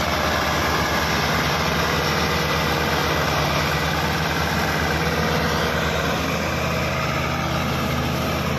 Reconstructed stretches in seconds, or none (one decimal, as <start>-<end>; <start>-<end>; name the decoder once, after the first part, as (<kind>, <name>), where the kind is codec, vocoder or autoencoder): none